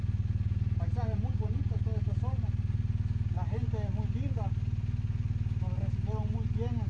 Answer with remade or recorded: recorded